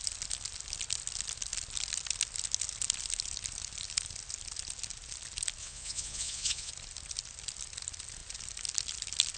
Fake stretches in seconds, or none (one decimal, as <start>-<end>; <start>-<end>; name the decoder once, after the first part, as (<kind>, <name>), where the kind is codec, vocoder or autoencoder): 5.6-6.7 (vocoder, Vocos)